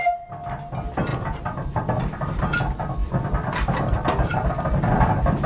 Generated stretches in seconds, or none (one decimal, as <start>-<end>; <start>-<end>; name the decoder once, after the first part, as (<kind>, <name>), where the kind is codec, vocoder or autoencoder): 1.1-2.4 (vocoder, BigVGAN v2)